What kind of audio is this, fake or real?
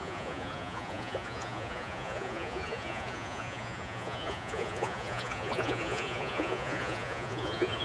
fake